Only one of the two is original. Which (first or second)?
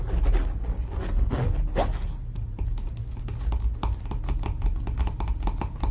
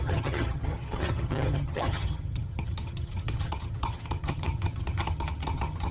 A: first